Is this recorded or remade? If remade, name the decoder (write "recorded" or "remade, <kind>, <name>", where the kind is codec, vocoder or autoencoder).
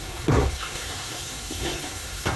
remade, codec, SNAC